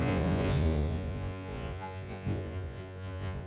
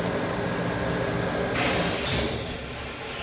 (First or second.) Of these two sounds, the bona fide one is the second